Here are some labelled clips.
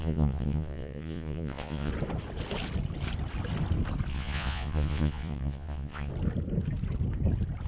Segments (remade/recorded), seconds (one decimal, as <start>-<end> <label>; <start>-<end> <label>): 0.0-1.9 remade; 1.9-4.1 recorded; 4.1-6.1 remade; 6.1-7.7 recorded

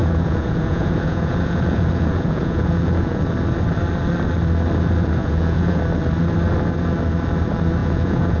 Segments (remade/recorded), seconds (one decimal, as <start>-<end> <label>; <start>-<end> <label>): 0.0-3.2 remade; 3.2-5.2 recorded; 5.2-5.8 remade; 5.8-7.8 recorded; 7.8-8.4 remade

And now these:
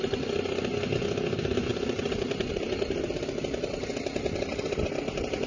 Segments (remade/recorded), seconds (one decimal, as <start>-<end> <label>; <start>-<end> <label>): 0.0-5.5 recorded

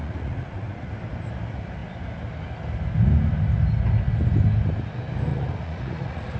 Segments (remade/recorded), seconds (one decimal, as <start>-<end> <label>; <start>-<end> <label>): 0.0-0.9 remade; 0.9-5.3 recorded; 5.3-6.4 remade